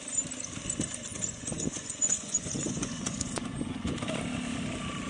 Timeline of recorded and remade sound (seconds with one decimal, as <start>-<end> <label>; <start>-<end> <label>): 0.0-1.1 recorded; 1.1-4.0 remade; 4.0-5.1 recorded